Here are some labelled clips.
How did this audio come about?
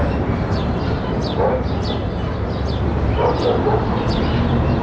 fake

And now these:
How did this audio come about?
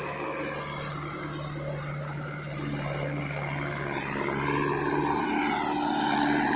real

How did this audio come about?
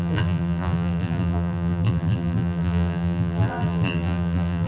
fake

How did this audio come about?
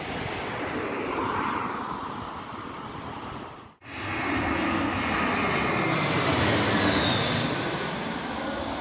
real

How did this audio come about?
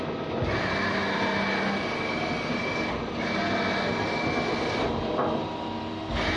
real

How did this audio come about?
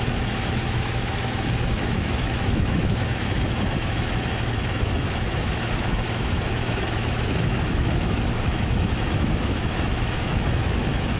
fake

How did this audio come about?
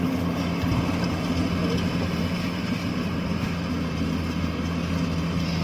real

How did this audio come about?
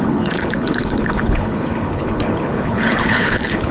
fake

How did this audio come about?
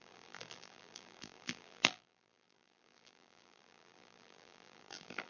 fake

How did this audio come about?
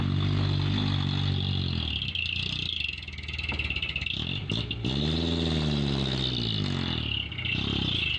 real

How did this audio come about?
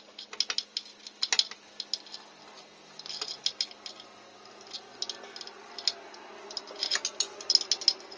real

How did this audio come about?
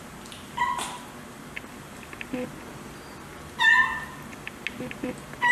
real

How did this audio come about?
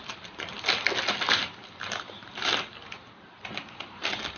real